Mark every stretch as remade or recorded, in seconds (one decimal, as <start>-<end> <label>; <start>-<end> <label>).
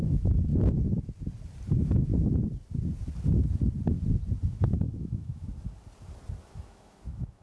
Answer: 0.0-0.5 remade; 0.5-1.7 recorded; 1.7-2.1 remade; 2.1-4.5 recorded; 4.5-5.5 remade; 5.5-6.4 recorded; 6.4-7.4 remade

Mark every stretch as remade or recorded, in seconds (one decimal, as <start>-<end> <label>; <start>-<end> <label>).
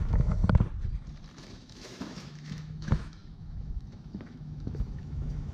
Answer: 0.0-0.4 remade; 0.4-1.4 recorded; 1.4-5.5 remade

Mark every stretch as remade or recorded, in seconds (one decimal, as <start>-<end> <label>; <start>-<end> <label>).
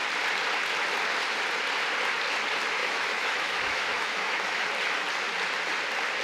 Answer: 0.0-2.8 recorded; 2.8-4.7 remade; 4.7-6.2 recorded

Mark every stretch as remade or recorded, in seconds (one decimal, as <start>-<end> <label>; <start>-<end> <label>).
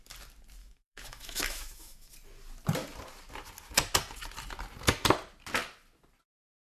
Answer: 0.0-0.6 recorded; 0.6-2.1 remade; 2.1-6.6 recorded